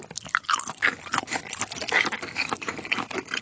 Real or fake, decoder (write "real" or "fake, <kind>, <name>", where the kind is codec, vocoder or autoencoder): real